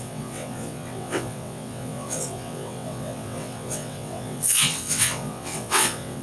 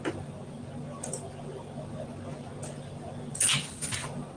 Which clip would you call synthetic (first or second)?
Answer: first